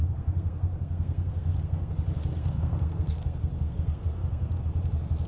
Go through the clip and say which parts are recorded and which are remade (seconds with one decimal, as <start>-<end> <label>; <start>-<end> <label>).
0.0-1.9 remade; 1.9-2.3 recorded; 2.3-4.6 remade; 4.6-5.3 recorded